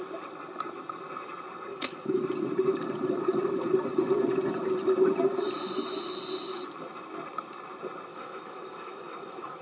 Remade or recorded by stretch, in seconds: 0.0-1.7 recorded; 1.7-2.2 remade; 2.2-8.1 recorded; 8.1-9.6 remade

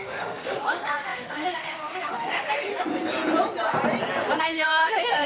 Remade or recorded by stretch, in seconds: 0.0-2.7 remade; 2.7-4.4 recorded; 4.4-5.3 remade

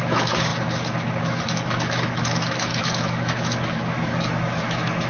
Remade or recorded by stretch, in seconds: 0.0-5.1 remade

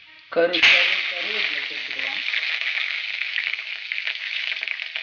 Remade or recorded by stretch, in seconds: 0.0-1.8 recorded; 1.8-4.5 remade; 4.5-5.0 recorded

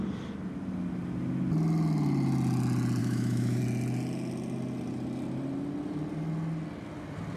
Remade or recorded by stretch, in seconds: 0.0-3.0 recorded; 3.0-3.6 remade; 3.6-7.4 recorded

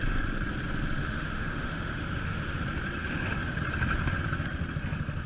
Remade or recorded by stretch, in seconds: 0.0-1.0 recorded; 1.0-2.6 remade; 2.6-3.0 recorded; 3.0-3.6 remade; 3.6-5.3 recorded

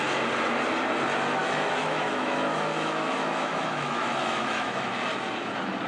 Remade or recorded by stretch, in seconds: 0.0-1.4 recorded; 1.4-4.9 remade; 4.9-5.9 recorded

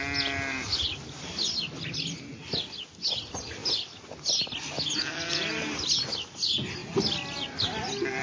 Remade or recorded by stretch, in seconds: 0.0-8.2 recorded